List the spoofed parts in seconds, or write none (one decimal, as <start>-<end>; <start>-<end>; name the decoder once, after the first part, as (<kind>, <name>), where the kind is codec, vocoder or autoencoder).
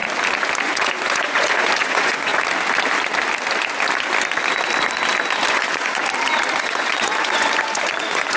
0.6-2.3 (vocoder, Vocos); 5.5-6.0; 6.6-8.4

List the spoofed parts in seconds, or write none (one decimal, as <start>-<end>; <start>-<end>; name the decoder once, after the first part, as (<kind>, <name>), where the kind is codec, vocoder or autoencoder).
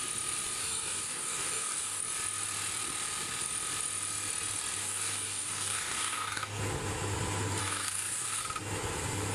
0.6-2.0 (codec, DAC); 4.8-6.6; 7.6-8.4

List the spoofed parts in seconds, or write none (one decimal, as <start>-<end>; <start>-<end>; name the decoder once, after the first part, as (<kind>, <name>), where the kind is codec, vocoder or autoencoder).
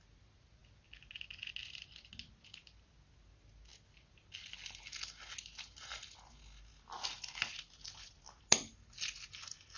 none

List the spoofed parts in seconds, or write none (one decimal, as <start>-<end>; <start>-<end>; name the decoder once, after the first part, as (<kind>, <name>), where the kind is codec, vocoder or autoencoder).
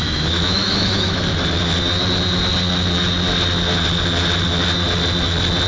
0.0-1.2 (autoencoder, DAC-VAE)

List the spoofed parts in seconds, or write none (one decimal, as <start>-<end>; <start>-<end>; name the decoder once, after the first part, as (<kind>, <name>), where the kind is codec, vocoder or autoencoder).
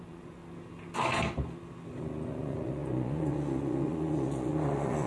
0.0-0.4 (vocoder, Vocos); 2.0-5.1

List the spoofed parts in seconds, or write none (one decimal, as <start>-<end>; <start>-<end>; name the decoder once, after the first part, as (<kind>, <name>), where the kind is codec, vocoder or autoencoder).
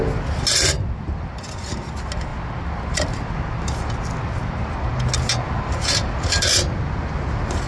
none